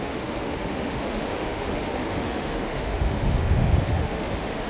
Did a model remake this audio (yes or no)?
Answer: yes